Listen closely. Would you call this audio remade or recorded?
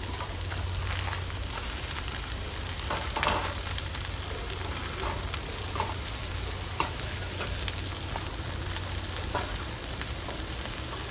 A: recorded